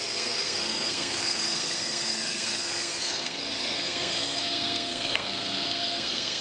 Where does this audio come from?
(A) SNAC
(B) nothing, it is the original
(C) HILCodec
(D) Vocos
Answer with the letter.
A